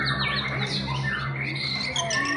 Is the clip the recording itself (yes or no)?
yes